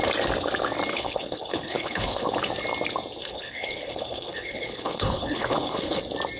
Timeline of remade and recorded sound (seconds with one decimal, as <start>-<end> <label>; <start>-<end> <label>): 0.0-0.9 recorded; 0.9-2.3 remade; 2.3-3.2 recorded; 3.2-6.0 remade; 6.0-6.4 recorded